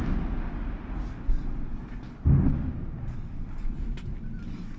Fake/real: real